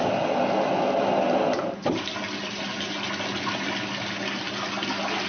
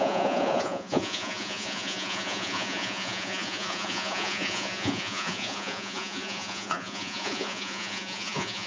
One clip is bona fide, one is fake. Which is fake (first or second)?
second